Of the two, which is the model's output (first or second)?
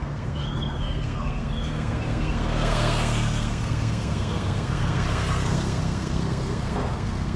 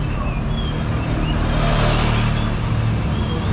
first